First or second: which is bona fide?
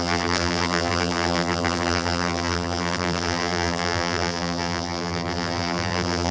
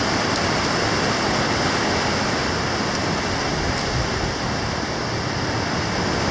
second